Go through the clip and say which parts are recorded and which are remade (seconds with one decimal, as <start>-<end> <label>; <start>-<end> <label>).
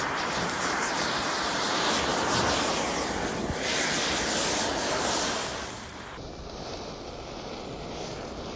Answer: 0.0-2.1 remade; 2.1-3.4 recorded; 3.4-5.4 remade; 5.4-7.2 recorded; 7.2-8.6 remade